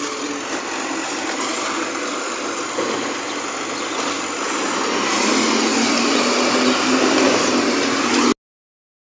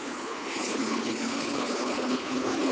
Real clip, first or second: first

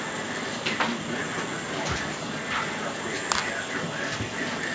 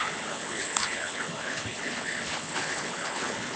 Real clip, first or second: first